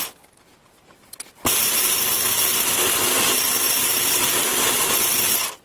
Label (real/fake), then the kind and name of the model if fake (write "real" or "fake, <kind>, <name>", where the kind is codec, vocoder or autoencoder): real